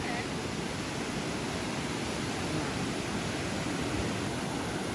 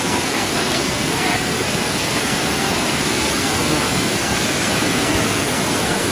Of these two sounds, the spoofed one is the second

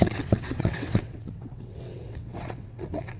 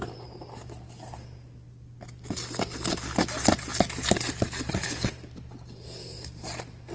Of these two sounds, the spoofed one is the first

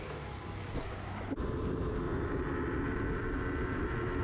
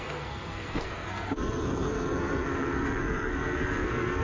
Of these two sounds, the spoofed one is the second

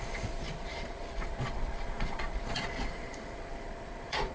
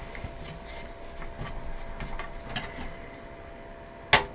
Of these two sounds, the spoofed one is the first